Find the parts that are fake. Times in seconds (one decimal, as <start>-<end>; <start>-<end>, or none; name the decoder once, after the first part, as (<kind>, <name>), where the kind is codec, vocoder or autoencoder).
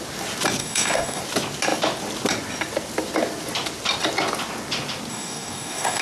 0.6-1.2 (codec, DAC); 5.1-6.0